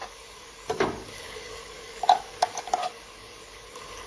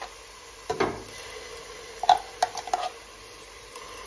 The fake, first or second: first